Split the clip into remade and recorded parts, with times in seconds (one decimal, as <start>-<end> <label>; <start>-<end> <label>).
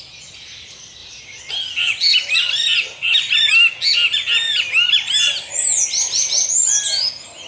0.0-7.5 recorded